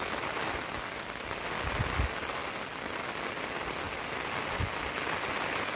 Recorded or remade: recorded